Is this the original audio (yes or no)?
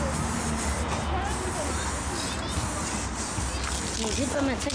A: yes